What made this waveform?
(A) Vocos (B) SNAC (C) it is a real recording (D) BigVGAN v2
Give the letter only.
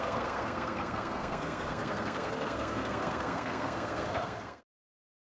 B